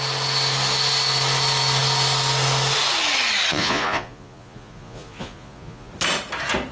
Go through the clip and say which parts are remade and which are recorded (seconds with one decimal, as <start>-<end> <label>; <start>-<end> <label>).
0.0-3.5 recorded; 3.5-5.9 remade; 5.9-6.7 recorded